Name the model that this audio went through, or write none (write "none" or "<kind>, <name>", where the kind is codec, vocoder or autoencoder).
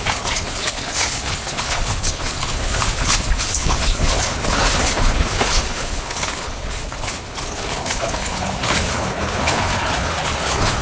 codec, HILCodec